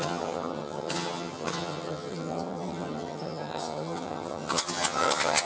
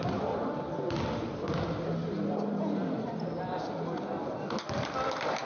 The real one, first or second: second